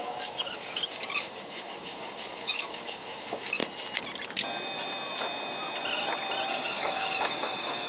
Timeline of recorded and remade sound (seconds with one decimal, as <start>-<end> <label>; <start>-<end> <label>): 0.0-3.6 remade; 3.6-6.5 recorded; 6.5-7.9 remade